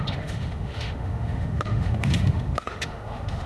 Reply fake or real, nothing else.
fake